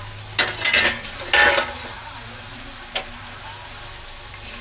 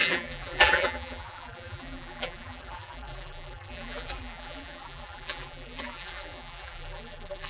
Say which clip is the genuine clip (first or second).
first